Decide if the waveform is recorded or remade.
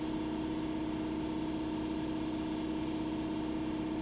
recorded